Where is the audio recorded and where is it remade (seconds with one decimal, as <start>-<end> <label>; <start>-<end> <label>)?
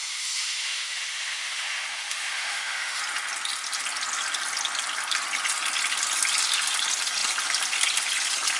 0.0-3.0 remade; 3.0-8.6 recorded